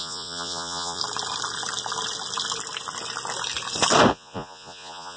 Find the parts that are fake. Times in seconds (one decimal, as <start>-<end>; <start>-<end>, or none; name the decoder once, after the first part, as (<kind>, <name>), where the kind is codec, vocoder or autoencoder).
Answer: 0.0-1.0 (vocoder, Vocos); 4.1-5.2

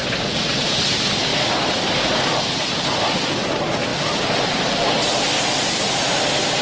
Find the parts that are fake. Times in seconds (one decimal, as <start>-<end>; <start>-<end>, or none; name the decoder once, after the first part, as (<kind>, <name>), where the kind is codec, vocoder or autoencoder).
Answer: 0.0-0.8 (vocoder, Vocos)

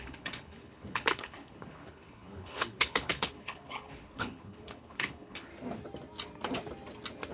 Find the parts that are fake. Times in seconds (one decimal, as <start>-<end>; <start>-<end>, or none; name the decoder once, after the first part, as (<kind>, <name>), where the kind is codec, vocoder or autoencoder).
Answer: 0.0-5.5 (codec, HILCodec)

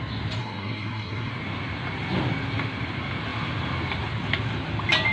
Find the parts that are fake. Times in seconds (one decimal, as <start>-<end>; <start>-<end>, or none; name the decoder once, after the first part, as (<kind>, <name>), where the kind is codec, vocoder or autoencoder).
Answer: 0.4-1.3 (codec, SNAC)

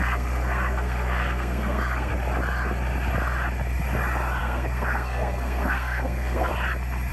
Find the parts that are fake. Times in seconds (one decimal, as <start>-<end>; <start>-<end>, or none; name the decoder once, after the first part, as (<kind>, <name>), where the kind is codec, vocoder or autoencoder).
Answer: 0.0-2.1 (codec, SNAC); 4.4-6.5

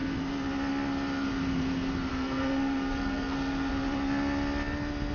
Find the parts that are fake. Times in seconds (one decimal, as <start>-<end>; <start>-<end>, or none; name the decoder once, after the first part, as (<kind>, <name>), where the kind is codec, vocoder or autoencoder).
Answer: 2.1-3.7 (codec, SNAC)